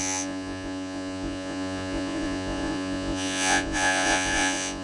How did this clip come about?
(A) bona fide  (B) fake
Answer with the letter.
B